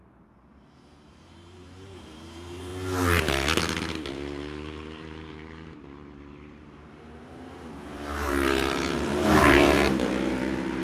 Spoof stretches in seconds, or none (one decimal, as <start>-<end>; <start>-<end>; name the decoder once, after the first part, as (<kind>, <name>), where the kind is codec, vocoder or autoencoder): 0.0-2.7 (vocoder, BigVGAN v2); 4.1-10.8